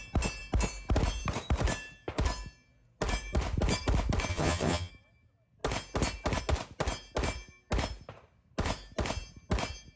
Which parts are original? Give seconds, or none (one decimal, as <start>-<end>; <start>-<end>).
0.0-4.3; 4.9-10.0